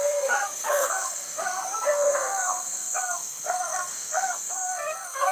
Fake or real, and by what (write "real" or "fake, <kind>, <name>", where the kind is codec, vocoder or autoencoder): fake, codec, SNAC